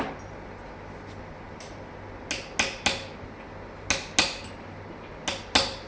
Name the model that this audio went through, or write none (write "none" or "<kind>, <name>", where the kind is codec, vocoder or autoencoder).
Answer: none